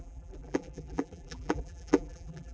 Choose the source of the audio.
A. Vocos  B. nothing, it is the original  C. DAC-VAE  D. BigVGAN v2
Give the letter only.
D